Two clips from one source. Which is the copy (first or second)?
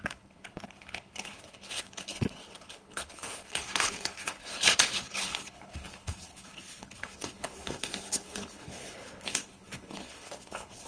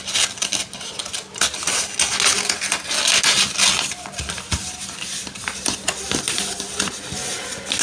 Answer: first